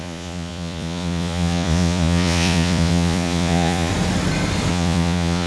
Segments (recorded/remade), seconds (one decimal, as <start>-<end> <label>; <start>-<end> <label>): 0.0-3.9 remade; 3.9-4.7 recorded; 4.7-5.5 remade

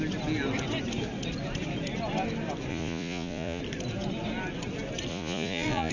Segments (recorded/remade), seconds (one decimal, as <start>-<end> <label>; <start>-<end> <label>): 0.0-2.7 recorded; 2.7-3.6 remade; 3.6-5.1 recorded; 5.1-5.9 remade

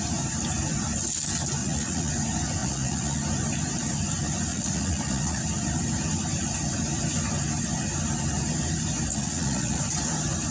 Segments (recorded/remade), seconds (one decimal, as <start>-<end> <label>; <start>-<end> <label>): 0.0-1.6 recorded; 1.6-2.1 remade; 2.1-2.6 recorded; 2.6-3.2 remade; 3.2-4.5 recorded; 4.5-5.4 remade; 5.4-9.1 recorded; 9.1-9.8 remade; 9.8-10.5 recorded

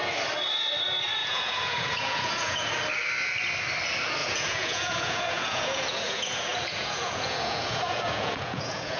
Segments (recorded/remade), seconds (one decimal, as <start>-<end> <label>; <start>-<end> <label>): 0.0-1.2 recorded; 1.2-2.7 remade; 2.7-4.2 recorded; 4.2-9.0 remade

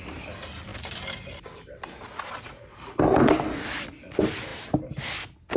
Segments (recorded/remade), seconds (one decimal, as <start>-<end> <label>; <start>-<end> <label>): 0.0-5.6 recorded